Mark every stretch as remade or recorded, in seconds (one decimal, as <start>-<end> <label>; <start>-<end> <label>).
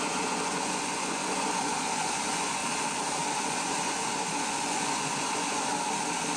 0.0-2.6 remade; 2.6-3.3 recorded; 3.3-5.7 remade; 5.7-6.4 recorded